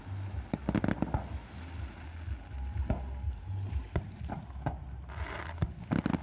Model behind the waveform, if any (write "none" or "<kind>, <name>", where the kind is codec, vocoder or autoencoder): none